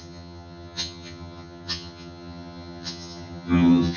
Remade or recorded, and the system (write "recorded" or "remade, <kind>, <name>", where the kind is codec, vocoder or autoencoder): remade, vocoder, HiFi-GAN